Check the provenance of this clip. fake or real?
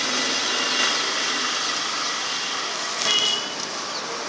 real